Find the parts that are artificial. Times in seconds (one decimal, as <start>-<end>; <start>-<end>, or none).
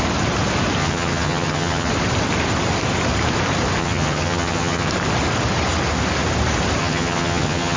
0.8-1.9; 3.8-4.9; 6.8-7.8